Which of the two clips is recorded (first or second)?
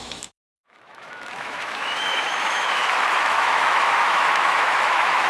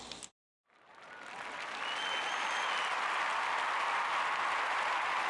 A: second